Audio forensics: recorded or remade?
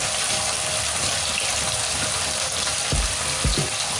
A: remade